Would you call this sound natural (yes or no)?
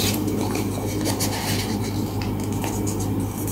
yes